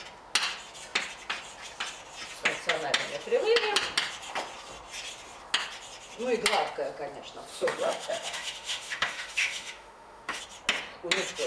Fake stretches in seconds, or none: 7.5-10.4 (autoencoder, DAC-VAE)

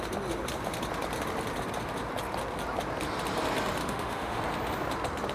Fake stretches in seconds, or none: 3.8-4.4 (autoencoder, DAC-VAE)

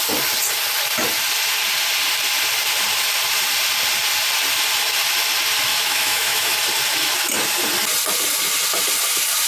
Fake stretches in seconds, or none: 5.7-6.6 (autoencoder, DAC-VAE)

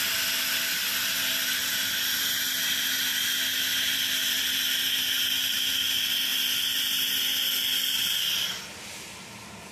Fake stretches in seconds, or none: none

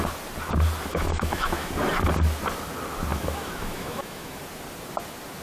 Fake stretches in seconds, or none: 0.9-1.7 (autoencoder, DAC-VAE); 3.1-4.4

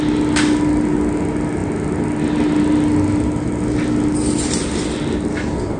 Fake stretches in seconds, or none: none

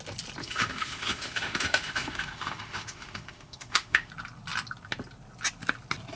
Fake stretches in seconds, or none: 0.4-4.1 (autoencoder, DAC-VAE)